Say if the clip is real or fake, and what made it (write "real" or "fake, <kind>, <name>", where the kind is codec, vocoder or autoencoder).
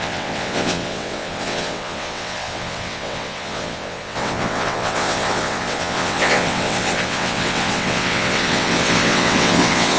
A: fake, vocoder, WaveNeXt